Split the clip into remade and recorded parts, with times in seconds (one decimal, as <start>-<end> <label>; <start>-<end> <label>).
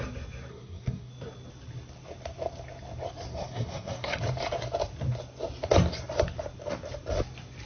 0.0-0.5 recorded; 0.5-1.1 remade; 1.1-3.3 recorded; 3.3-4.2 remade; 4.2-7.7 recorded